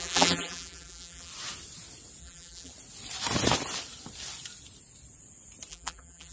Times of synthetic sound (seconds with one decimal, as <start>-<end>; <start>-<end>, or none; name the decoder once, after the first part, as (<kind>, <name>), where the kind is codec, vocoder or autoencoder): 0.0-1.3 (vocoder, BigVGAN v2); 2.2-2.7; 5.7-6.3